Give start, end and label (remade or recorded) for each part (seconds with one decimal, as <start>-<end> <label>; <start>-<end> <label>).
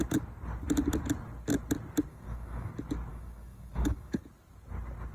0.0-2.1 recorded; 2.1-2.7 remade; 2.7-3.1 recorded; 3.1-4.2 remade; 4.2-5.1 recorded